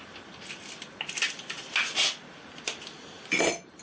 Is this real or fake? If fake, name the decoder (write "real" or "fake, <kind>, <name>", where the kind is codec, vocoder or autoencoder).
real